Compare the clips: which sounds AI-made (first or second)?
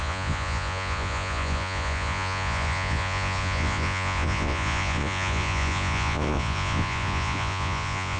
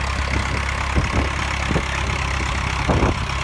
first